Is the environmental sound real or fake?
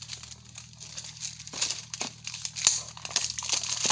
real